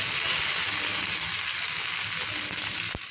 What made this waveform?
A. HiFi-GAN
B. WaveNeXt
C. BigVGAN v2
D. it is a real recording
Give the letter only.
D